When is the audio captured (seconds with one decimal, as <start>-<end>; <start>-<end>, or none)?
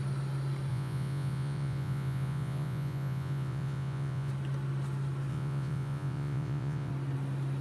0.0-0.7; 4.3-5.3; 6.9-7.6